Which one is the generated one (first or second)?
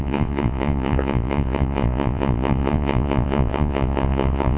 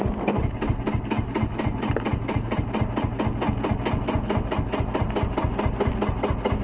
first